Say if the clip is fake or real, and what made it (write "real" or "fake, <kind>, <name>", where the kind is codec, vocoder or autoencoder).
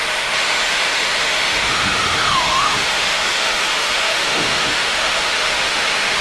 fake, autoencoder, DAC-VAE